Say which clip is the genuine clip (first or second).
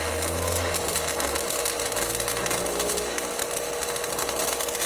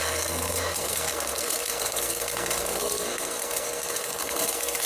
first